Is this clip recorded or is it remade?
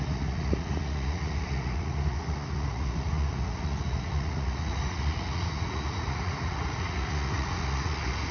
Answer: remade